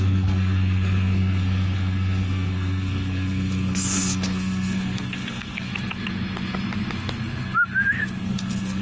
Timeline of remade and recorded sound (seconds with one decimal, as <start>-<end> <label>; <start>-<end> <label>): 0.0-5.7 remade; 5.7-8.2 recorded; 8.2-8.8 remade